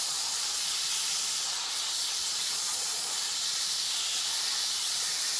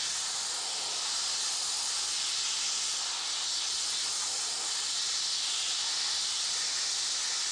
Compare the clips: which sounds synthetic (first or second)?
first